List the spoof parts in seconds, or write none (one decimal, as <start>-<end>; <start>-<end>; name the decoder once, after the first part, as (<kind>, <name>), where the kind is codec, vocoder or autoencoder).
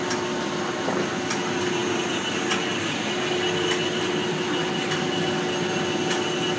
none